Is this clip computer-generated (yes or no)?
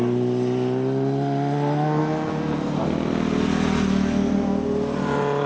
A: no